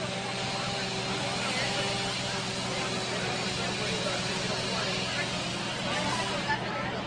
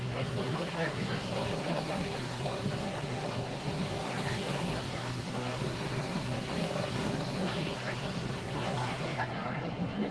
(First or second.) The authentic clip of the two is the first